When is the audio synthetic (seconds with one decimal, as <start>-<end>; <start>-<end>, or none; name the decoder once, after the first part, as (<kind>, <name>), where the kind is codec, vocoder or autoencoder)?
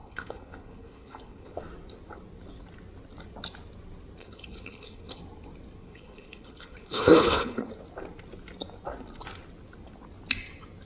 0.0-1.6 (codec, HILCodec); 4.2-5.2; 5.8-7.7